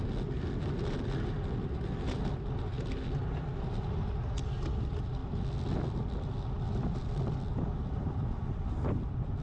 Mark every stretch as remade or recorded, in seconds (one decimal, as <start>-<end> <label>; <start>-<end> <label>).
0.0-9.4 recorded